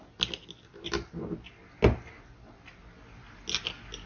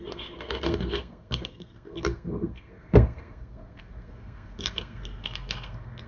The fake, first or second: second